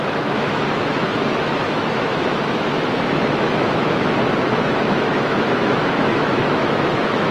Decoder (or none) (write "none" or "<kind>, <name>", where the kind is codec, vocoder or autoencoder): autoencoder, DAC-VAE